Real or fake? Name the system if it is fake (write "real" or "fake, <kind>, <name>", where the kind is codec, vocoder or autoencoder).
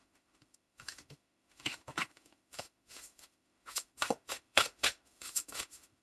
fake, autoencoder, DAC-VAE